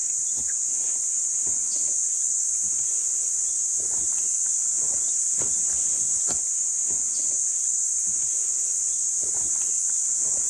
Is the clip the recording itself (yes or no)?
yes